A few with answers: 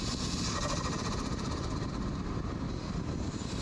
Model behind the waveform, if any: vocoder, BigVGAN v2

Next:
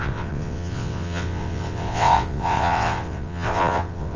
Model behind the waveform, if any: vocoder, WaveNeXt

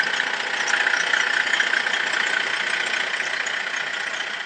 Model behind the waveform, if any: none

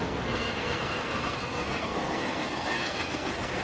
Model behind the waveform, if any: codec, SNAC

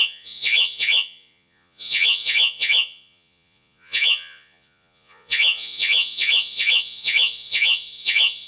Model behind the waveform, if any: vocoder, Vocos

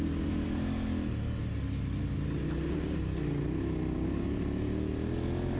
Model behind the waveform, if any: none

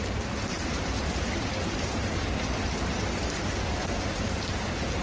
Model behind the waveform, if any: vocoder, BigVGAN v2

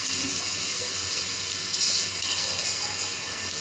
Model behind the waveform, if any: codec, SNAC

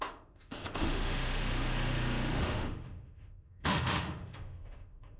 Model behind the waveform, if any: autoencoder, DAC-VAE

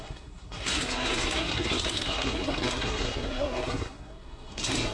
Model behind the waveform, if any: codec, SNAC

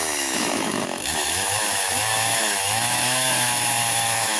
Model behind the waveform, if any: autoencoder, DAC-VAE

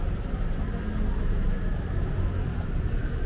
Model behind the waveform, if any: none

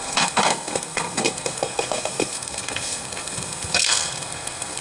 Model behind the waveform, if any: codec, SNAC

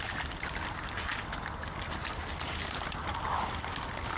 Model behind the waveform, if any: none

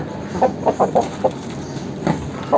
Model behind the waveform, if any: none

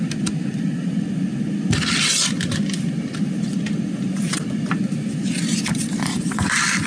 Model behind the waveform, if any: none